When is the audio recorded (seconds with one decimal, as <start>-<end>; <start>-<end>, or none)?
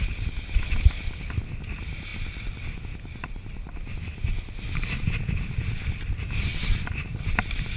0.0-7.8